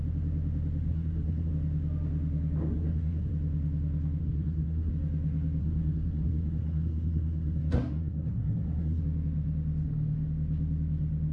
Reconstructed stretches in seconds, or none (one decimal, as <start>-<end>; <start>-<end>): 0.9-1.5; 2.7-3.3; 4.2-4.9; 5.6-9.0